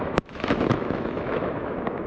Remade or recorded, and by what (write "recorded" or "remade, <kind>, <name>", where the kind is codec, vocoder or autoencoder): remade, autoencoder, DAC-VAE